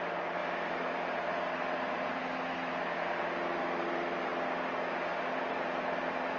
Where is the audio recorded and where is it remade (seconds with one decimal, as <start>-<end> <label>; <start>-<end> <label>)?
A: 0.0-4.3 remade; 4.3-5.2 recorded; 5.2-6.4 remade